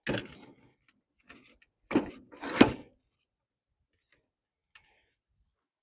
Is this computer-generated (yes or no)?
no